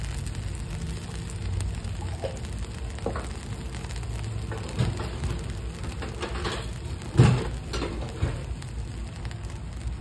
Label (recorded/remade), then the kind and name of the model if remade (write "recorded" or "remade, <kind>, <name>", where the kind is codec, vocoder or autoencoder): recorded